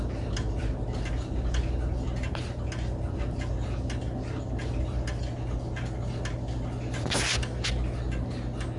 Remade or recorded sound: recorded